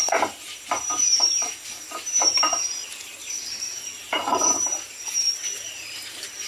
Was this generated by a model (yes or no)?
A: yes